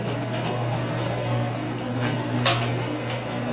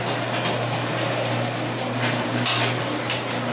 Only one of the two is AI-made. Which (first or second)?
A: first